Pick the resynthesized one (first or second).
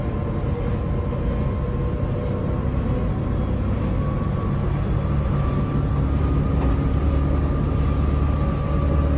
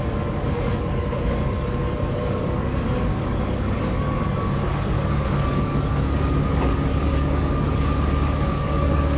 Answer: second